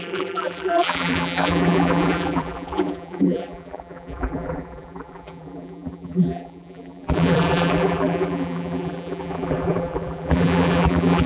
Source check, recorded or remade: remade